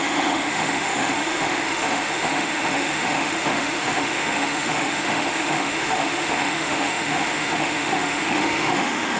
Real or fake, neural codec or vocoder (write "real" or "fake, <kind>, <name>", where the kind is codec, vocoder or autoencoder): fake, autoencoder, DAC-VAE